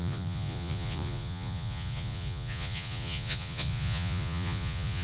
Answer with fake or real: fake